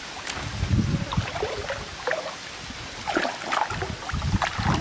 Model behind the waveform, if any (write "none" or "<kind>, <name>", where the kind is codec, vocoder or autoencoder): none